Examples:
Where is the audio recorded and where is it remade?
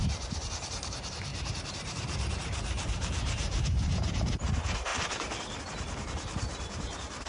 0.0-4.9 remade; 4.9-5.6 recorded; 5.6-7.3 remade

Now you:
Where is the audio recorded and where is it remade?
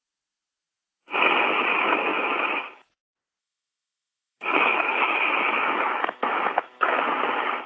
0.0-3.4 recorded; 3.4-7.0 remade; 7.0-7.7 recorded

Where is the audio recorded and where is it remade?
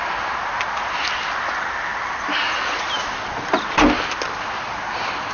0.0-5.3 recorded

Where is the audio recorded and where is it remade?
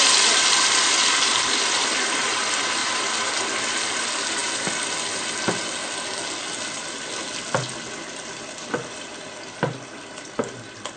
0.0-11.0 recorded